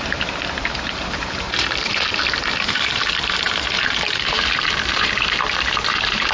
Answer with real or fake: fake